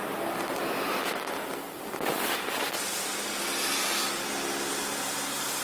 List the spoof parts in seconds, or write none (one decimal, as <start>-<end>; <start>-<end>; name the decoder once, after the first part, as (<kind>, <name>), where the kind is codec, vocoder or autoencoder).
none